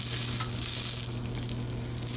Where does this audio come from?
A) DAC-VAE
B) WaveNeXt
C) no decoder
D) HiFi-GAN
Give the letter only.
C